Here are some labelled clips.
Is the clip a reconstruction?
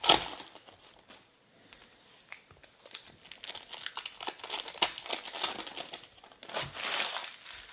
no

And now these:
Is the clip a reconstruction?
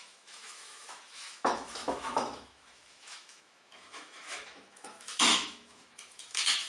yes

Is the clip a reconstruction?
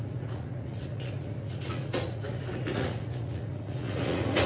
yes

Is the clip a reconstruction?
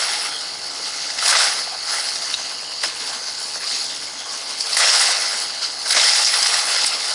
yes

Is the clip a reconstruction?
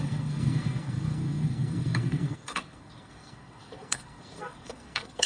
yes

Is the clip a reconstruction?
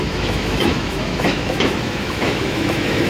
yes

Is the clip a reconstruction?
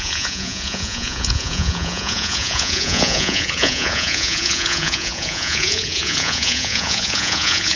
yes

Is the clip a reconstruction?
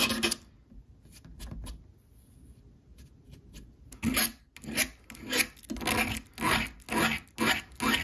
no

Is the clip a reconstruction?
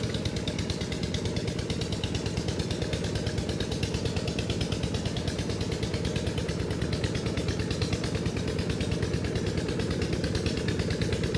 no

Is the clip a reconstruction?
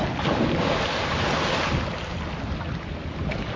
no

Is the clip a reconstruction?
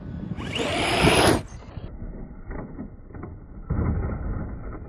no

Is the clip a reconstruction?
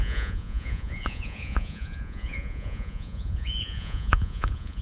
yes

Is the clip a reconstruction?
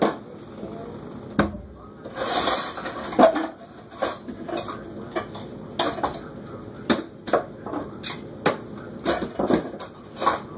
no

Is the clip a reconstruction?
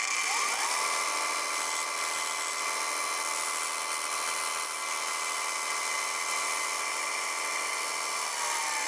no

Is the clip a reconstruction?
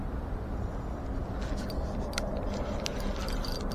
no